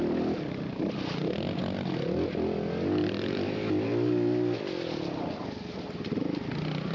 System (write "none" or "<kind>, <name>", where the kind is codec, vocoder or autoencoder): none